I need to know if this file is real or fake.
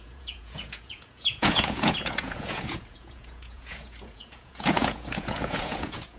fake